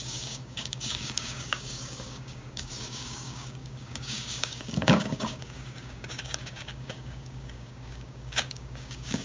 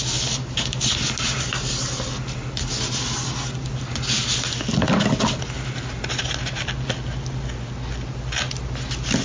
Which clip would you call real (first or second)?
second